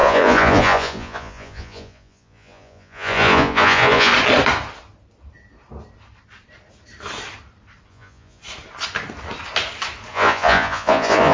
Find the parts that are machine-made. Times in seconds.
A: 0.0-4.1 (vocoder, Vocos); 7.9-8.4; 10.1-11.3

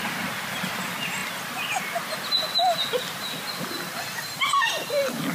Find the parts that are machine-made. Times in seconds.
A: none

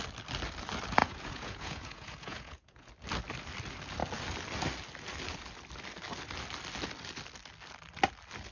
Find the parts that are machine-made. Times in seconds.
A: 1.0-2.9 (vocoder, Vocos)

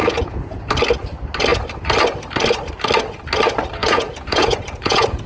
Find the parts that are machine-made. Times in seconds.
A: 0.0-0.7 (vocoder, Vocos); 3.8-5.3

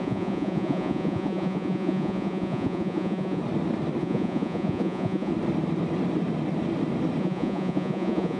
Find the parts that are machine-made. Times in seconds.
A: 0.0-3.4 (vocoder, Vocos); 4.0-5.3; 7.2-8.4

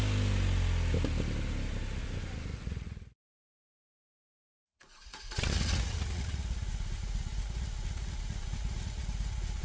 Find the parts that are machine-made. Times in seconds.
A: 2.5-4.3 (vocoder, Vocos); 4.7-9.6

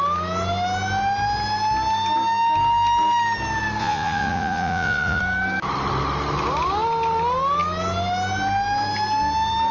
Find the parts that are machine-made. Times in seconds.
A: 3.8-5.2 (vocoder, Vocos)

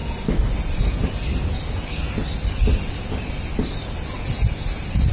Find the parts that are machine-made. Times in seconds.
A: none